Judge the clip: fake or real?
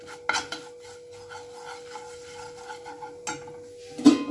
real